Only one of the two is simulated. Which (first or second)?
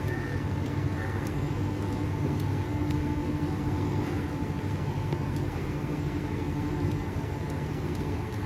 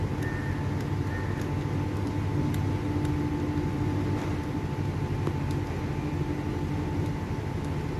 first